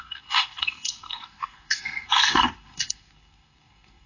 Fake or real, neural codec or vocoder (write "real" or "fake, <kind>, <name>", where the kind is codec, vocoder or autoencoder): fake, codec, SNAC